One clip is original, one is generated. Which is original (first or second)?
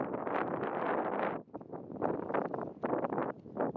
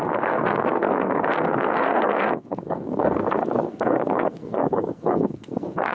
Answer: first